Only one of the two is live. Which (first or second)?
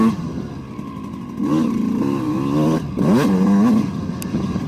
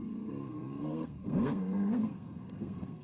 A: first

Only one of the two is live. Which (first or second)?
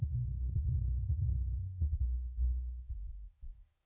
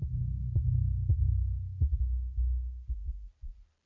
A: second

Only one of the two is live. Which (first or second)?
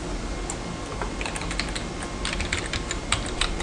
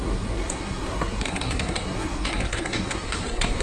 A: first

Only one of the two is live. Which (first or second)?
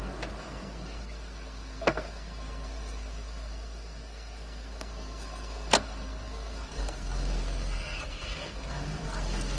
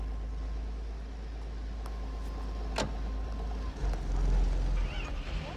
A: second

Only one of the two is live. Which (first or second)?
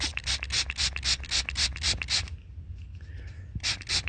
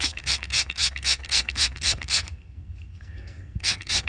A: first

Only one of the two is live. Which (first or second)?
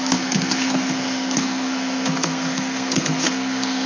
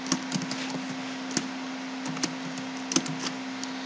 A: second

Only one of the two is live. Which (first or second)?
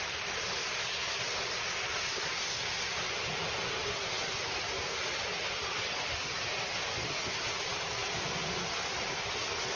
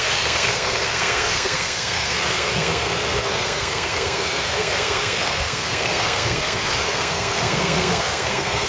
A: first